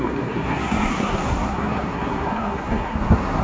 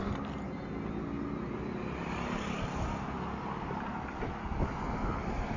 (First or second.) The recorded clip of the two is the second